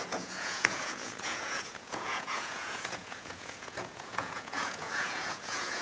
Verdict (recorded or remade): remade